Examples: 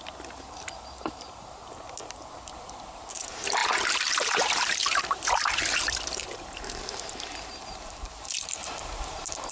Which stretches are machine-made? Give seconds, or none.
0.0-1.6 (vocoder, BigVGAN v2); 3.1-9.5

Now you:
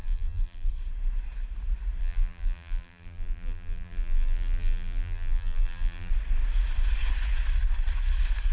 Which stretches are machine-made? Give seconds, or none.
0.0-0.7 (vocoder, BigVGAN v2); 2.0-6.1

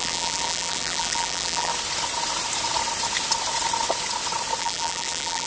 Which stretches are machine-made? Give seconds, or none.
0.0-1.7 (vocoder, BigVGAN v2); 4.6-5.5

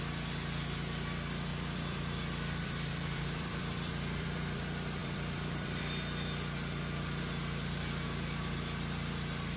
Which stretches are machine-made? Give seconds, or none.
1.5-4.6 (vocoder, BigVGAN v2); 5.0-5.8

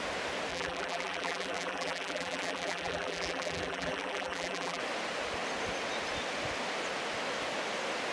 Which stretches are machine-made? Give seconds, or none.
0.5-4.8 (vocoder, BigVGAN v2)

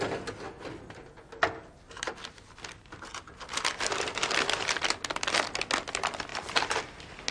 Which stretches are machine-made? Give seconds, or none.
none

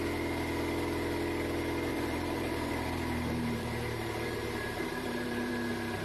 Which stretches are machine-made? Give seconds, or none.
1.9-5.5 (vocoder, BigVGAN v2)

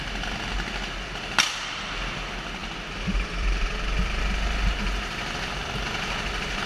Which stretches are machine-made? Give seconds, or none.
2.6-4.2 (vocoder, BigVGAN v2)